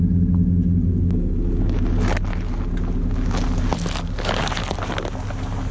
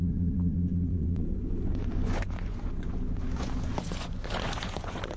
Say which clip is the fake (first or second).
second